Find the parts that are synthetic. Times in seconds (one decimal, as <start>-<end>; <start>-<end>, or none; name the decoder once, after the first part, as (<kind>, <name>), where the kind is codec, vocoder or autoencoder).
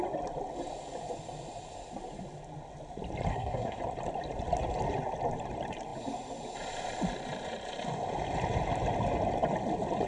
3.3-3.8 (codec, SNAC)